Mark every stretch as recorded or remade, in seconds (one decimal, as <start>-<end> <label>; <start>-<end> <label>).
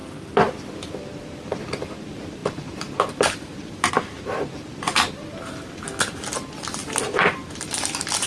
0.0-0.9 recorded; 0.9-8.3 remade